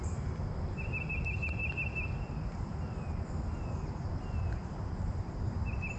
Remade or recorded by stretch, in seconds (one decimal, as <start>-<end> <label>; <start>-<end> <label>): 0.0-6.0 recorded